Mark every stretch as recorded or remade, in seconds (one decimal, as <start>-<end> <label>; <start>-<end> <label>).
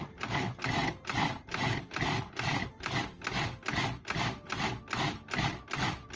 0.0-0.8 recorded; 0.8-3.0 remade; 3.0-6.2 recorded